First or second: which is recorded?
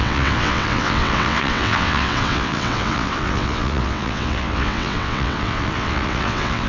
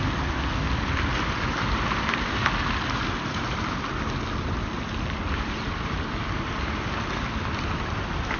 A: second